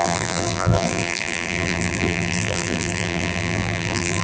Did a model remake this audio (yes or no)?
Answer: yes